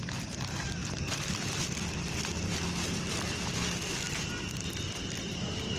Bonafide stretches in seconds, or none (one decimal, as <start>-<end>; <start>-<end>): 0.0-5.8